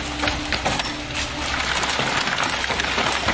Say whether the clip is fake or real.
real